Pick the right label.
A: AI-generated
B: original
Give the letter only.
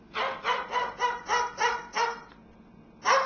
B